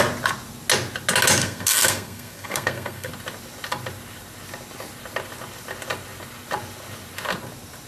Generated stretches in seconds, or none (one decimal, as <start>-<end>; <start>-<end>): 1.4-3.1